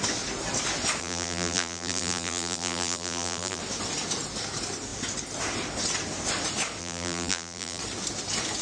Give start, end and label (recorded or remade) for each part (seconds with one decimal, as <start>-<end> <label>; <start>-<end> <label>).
0.0-1.0 recorded; 1.0-3.6 remade; 3.6-6.8 recorded; 6.8-7.8 remade; 7.8-8.6 recorded